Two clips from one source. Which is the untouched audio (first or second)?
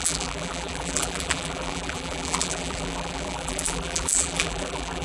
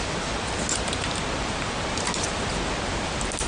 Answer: second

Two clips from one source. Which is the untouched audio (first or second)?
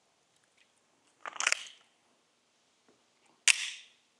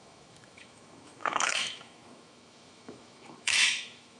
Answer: first